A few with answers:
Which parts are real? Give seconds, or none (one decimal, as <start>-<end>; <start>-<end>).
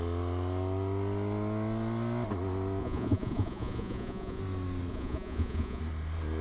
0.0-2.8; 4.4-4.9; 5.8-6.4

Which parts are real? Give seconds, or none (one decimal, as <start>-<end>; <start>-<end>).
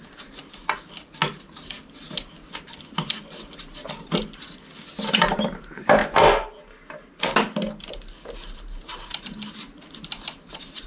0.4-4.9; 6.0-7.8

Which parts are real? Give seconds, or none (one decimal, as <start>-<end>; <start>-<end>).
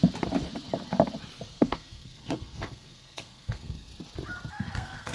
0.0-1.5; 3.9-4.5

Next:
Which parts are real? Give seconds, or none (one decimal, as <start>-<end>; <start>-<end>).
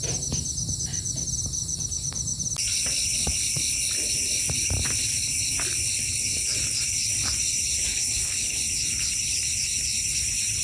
0.0-7.9; 8.6-10.6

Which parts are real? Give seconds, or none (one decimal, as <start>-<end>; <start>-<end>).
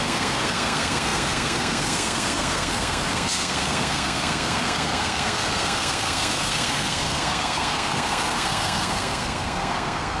none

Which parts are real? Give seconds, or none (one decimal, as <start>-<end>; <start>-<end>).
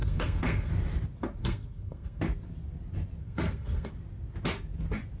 0.7-1.4; 2.2-3.2; 3.9-5.2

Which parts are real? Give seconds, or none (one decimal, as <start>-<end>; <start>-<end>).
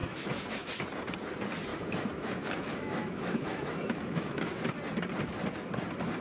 0.7-1.7; 4.6-6.2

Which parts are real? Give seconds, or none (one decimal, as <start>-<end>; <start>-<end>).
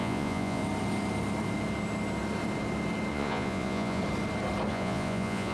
0.6-3.1; 4.0-4.7